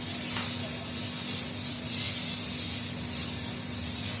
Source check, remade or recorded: recorded